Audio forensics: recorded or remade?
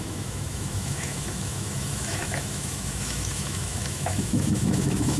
remade